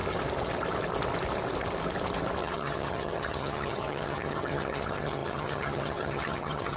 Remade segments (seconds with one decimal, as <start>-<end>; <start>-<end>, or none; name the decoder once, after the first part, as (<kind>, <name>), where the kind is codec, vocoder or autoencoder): 2.4-6.8 (vocoder, HiFi-GAN)